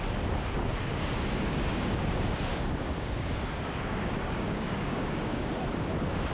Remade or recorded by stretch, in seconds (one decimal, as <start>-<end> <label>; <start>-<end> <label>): 0.0-0.9 recorded; 0.9-2.1 remade; 2.1-2.5 recorded; 2.5-5.5 remade; 5.5-6.3 recorded